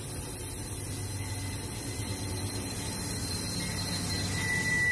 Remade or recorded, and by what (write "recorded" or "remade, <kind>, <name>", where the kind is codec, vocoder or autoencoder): recorded